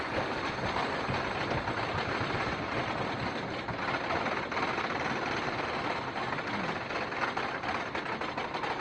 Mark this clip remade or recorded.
remade